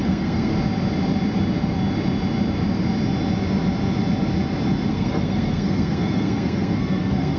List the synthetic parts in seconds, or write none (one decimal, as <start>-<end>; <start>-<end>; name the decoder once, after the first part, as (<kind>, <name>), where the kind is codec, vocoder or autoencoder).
0.0-0.5 (codec, SNAC); 4.9-7.4